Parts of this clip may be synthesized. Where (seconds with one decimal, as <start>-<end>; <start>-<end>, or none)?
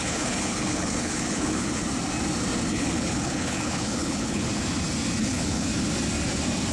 0.0-1.8; 2.7-4.5; 5.2-5.7